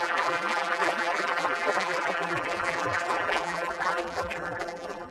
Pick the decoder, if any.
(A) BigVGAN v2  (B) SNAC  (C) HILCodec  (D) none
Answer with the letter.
A